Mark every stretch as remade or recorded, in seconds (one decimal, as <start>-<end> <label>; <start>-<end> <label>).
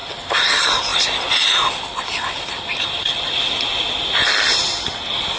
0.0-5.4 recorded